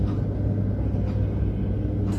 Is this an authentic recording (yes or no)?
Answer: yes